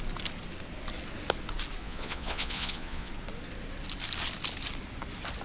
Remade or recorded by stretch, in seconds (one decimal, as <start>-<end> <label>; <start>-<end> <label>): 0.0-1.8 recorded; 1.8-3.1 remade; 3.1-5.4 recorded